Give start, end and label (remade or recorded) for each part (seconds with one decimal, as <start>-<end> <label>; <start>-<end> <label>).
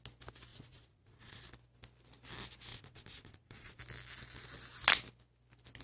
0.0-0.5 recorded; 0.5-1.4 remade; 1.4-2.7 recorded; 2.7-3.8 remade; 3.8-5.8 recorded